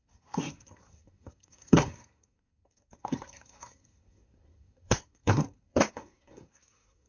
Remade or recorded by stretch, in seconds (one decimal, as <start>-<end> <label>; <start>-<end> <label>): 0.0-7.1 remade